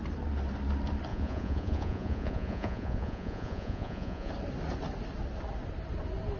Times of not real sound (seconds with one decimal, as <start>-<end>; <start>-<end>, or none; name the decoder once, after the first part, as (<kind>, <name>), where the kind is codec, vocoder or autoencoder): 1.1-4.3 (vocoder, Vocos)